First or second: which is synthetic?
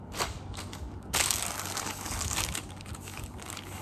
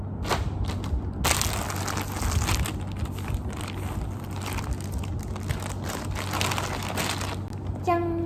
first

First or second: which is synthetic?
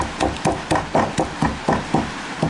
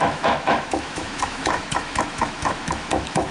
second